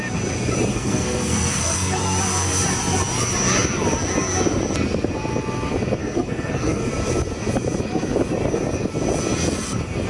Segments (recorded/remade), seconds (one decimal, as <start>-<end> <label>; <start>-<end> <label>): 0.0-0.7 recorded; 0.7-2.0 remade; 2.0-6.0 recorded; 6.0-6.9 remade; 6.9-10.1 recorded

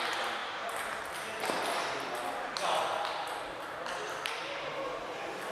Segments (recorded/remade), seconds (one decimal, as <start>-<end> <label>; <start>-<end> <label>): 0.0-0.4 recorded; 0.4-1.0 remade; 1.0-5.5 recorded

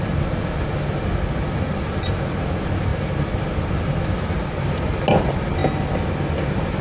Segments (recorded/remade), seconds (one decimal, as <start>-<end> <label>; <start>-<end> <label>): 0.0-6.8 recorded

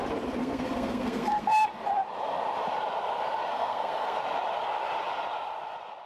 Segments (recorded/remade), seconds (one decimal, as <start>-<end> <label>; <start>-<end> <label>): 0.0-0.4 recorded; 0.4-1.6 remade; 1.6-3.5 recorded; 3.5-4.2 remade; 4.2-6.1 recorded

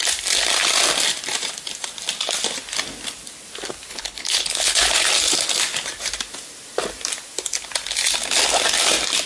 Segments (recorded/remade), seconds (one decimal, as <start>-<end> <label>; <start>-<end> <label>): 0.0-3.9 recorded; 3.9-5.1 remade; 5.1-9.3 recorded

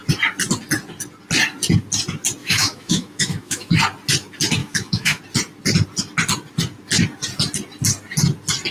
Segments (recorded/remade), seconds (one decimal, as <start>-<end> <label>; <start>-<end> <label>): 0.0-2.4 recorded; 2.4-3.8 remade; 3.8-4.6 recorded; 4.6-5.2 remade; 5.2-8.7 recorded

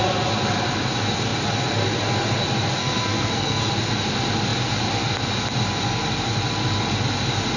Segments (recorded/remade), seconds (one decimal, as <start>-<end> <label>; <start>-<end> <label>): 0.0-2.8 recorded; 2.8-3.7 remade; 3.7-7.6 recorded

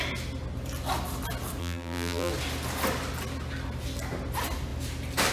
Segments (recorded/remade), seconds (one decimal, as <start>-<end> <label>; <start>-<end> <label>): 0.0-1.6 recorded; 1.6-2.3 remade; 2.3-5.3 recorded